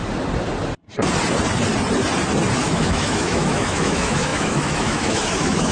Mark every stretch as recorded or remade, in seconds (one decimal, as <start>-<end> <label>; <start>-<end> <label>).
0.0-2.6 recorded; 2.6-5.7 remade